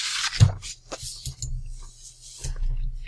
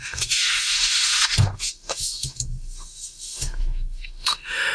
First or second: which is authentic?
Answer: first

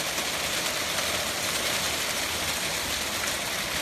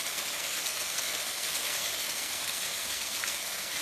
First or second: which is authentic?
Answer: first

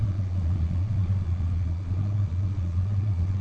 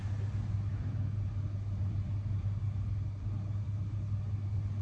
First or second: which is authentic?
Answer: second